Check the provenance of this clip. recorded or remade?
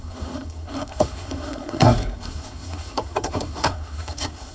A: remade